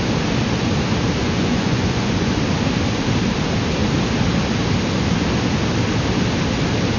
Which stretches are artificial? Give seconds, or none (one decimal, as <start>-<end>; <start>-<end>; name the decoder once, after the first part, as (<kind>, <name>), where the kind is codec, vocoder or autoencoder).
1.2-2.4 (vocoder, Vocos)